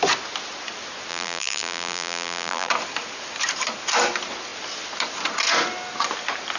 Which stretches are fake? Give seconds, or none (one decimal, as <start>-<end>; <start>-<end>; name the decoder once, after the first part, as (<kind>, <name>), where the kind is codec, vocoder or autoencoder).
1.1-2.7 (vocoder, BigVGAN v2)